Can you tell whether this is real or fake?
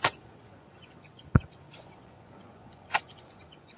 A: fake